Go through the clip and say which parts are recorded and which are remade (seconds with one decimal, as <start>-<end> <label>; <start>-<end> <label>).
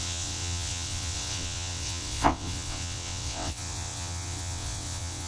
0.0-5.3 remade